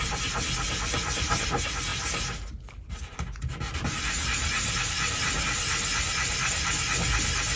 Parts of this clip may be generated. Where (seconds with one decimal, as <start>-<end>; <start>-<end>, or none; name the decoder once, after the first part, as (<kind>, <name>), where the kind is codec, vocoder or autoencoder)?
none